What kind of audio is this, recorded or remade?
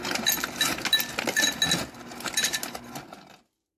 recorded